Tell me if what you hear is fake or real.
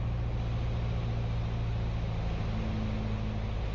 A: real